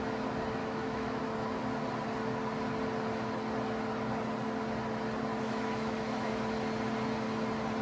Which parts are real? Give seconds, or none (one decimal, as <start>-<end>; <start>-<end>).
0.0-0.6; 1.2-5.3; 6.3-7.8